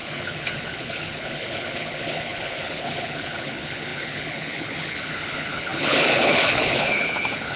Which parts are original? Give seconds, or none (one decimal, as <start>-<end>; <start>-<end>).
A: none